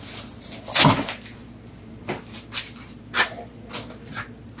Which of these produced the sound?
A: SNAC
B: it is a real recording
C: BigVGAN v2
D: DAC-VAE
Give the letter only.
B